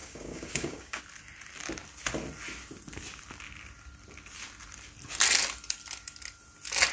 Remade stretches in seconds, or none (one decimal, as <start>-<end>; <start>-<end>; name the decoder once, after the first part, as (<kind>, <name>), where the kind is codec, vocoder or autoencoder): 0.0-1.0 (codec, DAC)